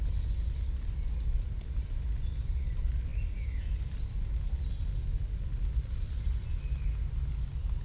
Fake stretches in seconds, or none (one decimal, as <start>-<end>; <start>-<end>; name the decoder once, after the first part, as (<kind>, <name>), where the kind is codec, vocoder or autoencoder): none